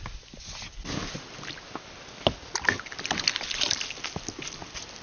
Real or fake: real